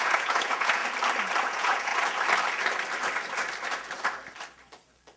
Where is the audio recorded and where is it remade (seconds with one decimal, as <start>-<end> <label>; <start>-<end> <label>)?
0.0-0.8 remade; 0.8-1.4 recorded; 1.4-1.9 remade; 1.9-5.2 recorded